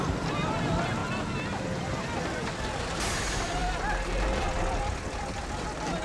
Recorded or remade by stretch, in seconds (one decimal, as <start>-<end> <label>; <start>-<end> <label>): 0.0-3.6 recorded; 3.6-6.0 remade